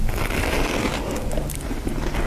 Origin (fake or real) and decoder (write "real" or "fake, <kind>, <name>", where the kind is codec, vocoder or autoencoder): real